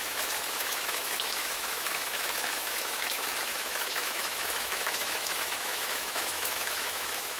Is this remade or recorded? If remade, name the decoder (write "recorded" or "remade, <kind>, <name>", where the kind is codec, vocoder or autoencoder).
remade, autoencoder, DAC-VAE